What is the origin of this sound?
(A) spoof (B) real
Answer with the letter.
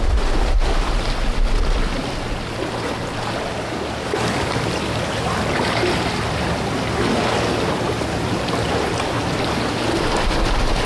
B